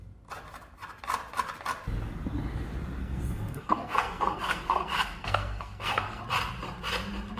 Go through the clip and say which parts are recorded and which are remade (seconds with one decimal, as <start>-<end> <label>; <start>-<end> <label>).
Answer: 0.0-3.0 recorded; 3.0-6.2 remade; 6.2-7.4 recorded